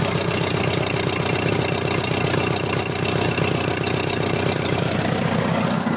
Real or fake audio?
real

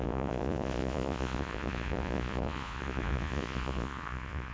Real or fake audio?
fake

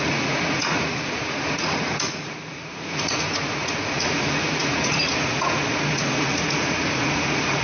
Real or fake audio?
fake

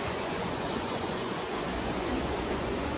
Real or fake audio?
fake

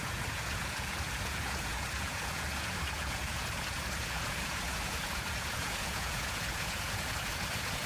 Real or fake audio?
fake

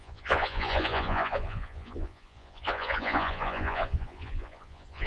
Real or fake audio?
fake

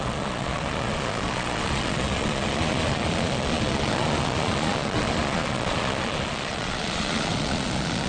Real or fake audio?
fake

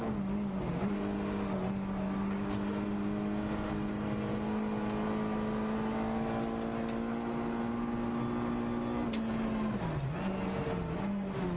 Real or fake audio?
real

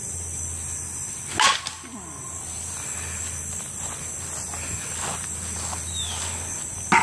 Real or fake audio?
real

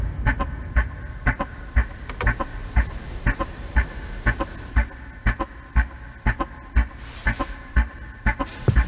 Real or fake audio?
real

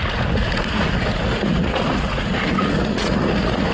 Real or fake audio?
fake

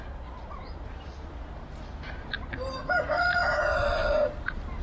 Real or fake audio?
real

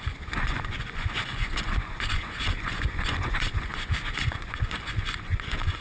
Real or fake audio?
fake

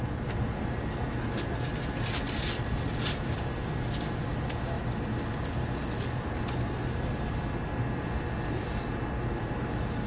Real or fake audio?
real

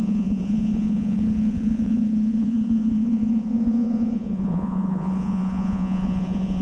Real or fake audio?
fake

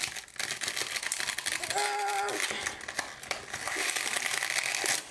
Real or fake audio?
real